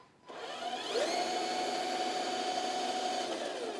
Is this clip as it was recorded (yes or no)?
yes